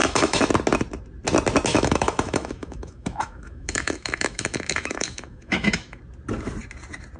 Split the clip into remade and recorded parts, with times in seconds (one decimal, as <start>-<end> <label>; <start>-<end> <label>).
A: 0.0-0.5 remade; 0.5-1.7 recorded; 1.7-6.0 remade; 6.0-7.2 recorded